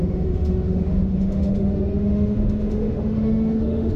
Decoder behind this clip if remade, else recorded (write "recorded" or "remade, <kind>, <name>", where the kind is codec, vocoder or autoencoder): remade, autoencoder, DAC-VAE